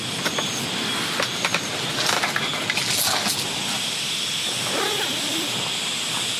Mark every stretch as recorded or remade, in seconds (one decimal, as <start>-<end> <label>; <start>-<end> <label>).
0.0-6.4 recorded